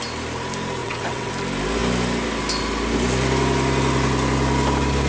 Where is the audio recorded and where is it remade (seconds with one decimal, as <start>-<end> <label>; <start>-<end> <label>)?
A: 0.0-0.8 recorded; 0.8-1.3 remade; 1.3-5.1 recorded